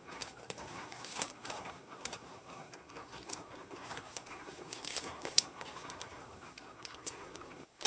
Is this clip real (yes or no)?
no